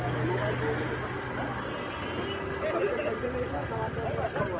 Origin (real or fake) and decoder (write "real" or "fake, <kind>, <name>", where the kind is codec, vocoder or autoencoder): real